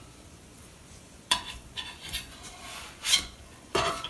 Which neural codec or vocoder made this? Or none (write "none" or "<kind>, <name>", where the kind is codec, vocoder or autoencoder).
vocoder, Vocos